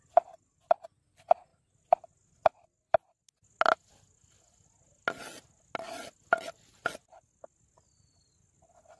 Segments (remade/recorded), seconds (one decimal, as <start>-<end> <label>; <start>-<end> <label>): 0.0-9.0 recorded